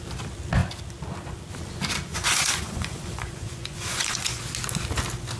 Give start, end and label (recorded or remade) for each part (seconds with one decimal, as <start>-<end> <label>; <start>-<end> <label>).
0.0-2.1 recorded; 2.1-4.4 remade; 4.4-5.4 recorded